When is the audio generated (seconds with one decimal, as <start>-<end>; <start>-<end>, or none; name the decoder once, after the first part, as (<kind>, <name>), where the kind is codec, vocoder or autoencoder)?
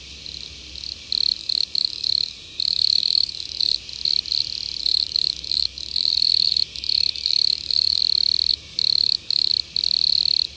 1.4-3.8 (codec, DAC); 4.8-8.0; 8.5-9.5